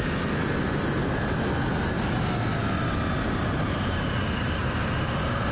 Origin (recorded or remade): recorded